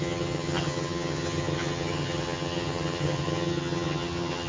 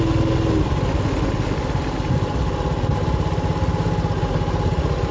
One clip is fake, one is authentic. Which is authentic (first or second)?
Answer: second